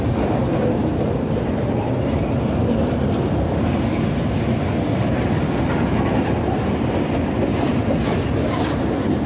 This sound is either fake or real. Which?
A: real